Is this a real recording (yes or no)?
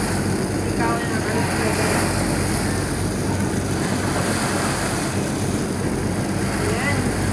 yes